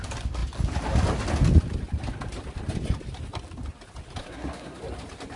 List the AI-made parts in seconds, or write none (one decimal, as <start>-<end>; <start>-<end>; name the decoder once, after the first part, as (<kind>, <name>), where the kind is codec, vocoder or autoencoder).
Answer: 4.2-4.8 (codec, SNAC)